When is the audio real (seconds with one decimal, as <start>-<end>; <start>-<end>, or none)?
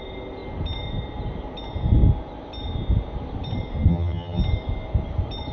0.0-3.9; 4.4-5.5